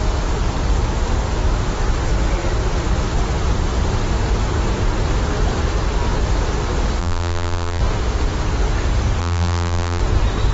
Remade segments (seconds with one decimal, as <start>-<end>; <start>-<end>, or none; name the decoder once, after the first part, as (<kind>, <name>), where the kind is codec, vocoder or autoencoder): 7.0-7.8 (vocoder, BigVGAN v2); 9.2-10.0